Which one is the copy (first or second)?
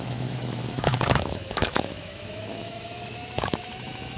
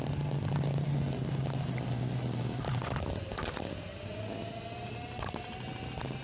first